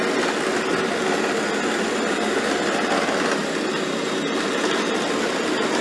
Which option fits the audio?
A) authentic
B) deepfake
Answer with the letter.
A